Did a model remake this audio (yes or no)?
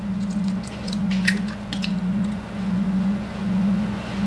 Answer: yes